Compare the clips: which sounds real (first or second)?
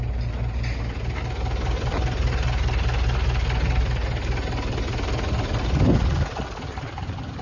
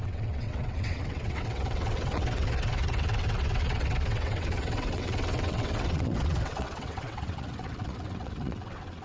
first